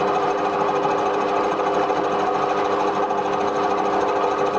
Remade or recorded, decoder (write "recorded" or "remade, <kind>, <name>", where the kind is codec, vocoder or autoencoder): recorded